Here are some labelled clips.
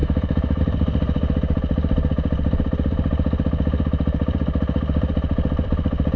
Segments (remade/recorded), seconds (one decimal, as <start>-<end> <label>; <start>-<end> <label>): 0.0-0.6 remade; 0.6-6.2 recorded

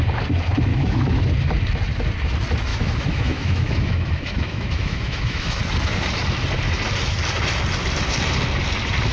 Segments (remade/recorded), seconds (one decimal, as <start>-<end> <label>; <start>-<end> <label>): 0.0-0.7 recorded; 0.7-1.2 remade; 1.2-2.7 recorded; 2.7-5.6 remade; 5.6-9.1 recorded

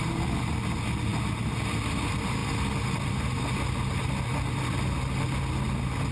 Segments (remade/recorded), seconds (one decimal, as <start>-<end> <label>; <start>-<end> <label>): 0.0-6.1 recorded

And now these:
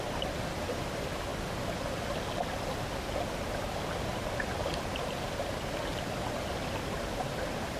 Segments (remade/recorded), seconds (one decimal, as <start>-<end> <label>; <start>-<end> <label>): 0.0-7.8 recorded